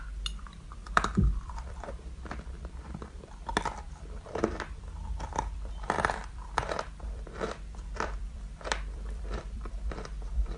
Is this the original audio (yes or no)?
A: no